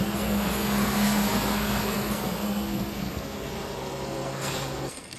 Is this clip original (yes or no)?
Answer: no